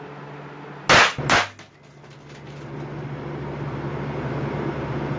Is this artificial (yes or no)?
no